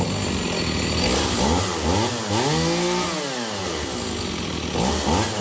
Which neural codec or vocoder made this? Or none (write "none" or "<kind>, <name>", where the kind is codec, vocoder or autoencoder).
none